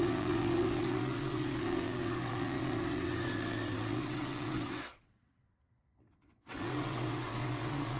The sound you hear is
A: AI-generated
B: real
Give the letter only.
A